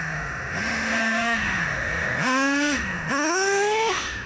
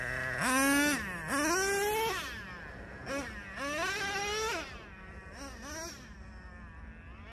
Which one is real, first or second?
second